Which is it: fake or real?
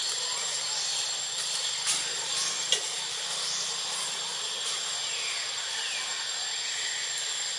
real